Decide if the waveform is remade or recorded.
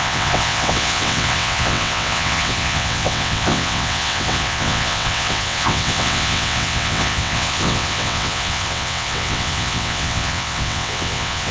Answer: remade